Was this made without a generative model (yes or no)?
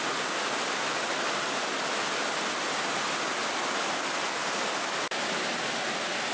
yes